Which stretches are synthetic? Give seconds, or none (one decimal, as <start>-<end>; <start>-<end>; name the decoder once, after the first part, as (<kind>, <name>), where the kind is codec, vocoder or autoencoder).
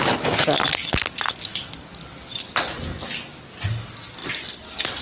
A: none